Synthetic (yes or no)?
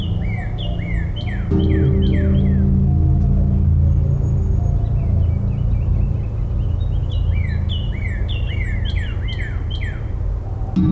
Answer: no